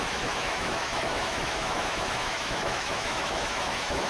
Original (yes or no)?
no